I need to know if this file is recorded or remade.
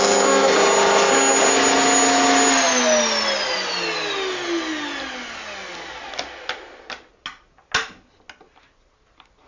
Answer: recorded